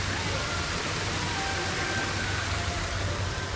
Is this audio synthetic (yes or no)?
no